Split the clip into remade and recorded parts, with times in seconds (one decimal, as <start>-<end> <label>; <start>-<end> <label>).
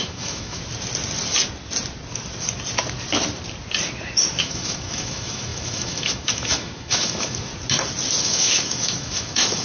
0.0-0.6 remade; 0.6-4.4 recorded; 4.4-7.5 remade; 7.5-8.2 recorded; 8.2-9.6 remade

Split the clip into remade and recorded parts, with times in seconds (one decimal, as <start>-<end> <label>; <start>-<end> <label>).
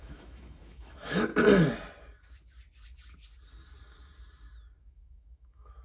0.0-1.3 remade; 1.3-4.8 recorded; 4.8-5.8 remade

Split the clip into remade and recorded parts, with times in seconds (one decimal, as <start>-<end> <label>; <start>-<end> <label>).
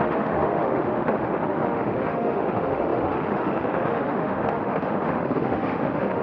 0.0-6.2 remade